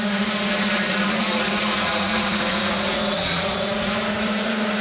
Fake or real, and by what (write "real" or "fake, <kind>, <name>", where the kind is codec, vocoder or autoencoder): fake, vocoder, Vocos